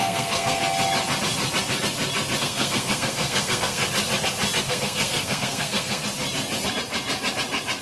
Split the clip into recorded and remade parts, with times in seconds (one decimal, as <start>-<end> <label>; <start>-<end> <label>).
0.0-0.6 remade; 0.6-2.4 recorded; 2.4-3.8 remade; 3.8-4.6 recorded; 4.6-6.0 remade; 6.0-7.8 recorded